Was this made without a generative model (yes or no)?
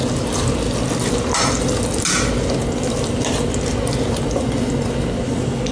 yes